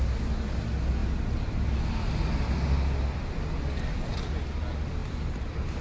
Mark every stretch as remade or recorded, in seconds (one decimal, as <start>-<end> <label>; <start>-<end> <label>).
0.0-5.8 recorded